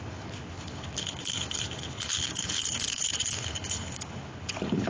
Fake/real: fake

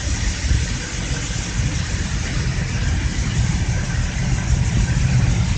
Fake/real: real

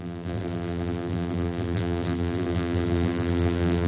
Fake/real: fake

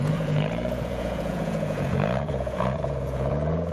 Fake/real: fake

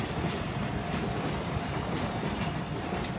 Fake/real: real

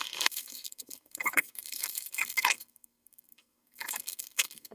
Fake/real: fake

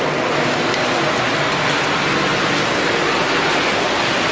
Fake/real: real